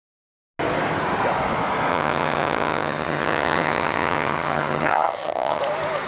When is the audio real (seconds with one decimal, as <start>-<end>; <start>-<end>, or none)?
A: 0.0-1.9; 5.6-6.1

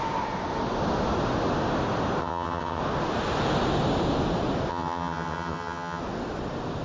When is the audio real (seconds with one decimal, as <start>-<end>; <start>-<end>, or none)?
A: 0.0-2.2; 2.8-4.7; 6.0-6.8